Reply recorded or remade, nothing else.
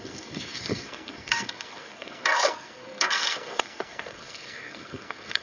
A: remade